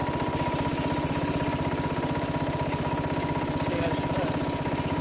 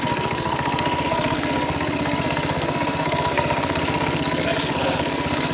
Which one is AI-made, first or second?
second